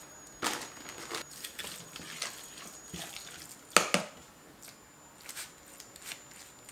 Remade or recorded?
recorded